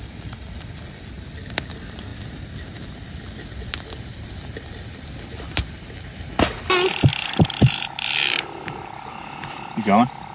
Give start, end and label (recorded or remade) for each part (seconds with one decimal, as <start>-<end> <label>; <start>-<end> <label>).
0.0-2.1 recorded; 2.1-5.2 remade; 5.2-7.1 recorded; 7.1-9.1 remade; 9.1-10.3 recorded